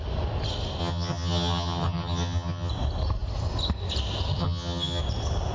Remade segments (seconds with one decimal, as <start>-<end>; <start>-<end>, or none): 0.8-2.7; 4.4-5.0

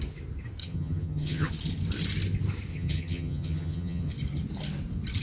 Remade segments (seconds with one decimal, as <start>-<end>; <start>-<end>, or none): 0.6-1.5; 2.7-4.1

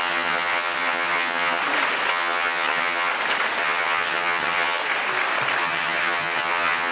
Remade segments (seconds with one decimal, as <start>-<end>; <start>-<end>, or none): 0.0-1.6; 2.1-3.1; 3.6-4.8; 5.6-6.9